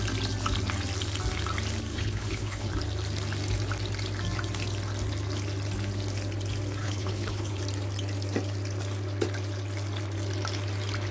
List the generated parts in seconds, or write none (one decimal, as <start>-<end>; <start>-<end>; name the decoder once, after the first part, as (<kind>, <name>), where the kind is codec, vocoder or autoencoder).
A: 1.9-2.7 (codec, HILCodec); 6.8-7.6